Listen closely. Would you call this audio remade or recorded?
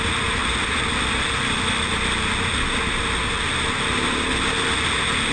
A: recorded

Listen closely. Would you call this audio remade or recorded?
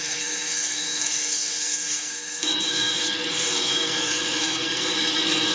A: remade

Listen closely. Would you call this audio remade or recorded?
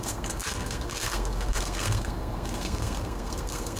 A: remade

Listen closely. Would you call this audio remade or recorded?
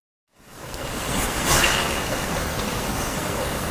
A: remade